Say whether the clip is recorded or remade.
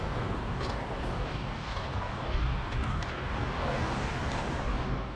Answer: remade